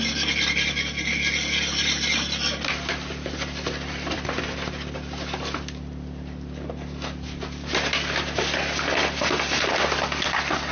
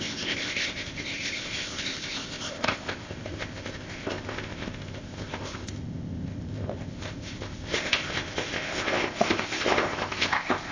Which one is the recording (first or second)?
first